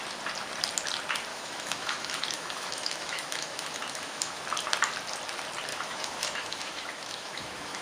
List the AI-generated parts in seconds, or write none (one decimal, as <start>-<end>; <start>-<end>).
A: 1.3-4.4; 5.7-7.8

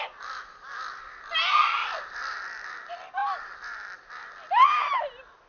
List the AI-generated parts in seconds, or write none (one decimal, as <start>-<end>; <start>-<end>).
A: none

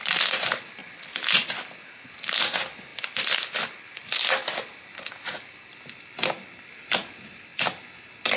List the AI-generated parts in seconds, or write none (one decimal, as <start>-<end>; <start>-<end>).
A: 4.9-5.4